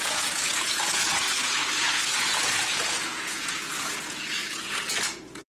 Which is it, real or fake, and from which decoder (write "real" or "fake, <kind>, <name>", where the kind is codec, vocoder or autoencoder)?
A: fake, vocoder, Vocos